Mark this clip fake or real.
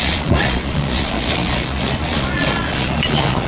fake